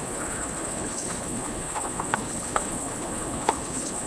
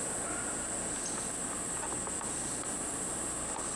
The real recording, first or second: second